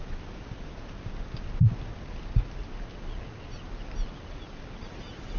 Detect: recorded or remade recorded